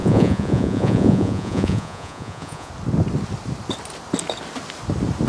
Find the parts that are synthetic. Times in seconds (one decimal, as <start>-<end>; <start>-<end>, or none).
0.0-2.7